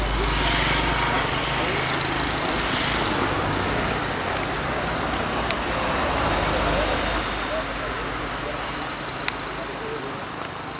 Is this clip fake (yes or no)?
no